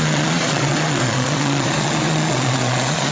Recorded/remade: remade